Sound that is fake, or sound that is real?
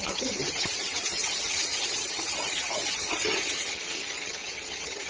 fake